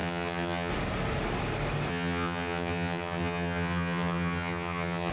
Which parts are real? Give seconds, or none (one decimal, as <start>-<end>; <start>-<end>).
0.7-1.9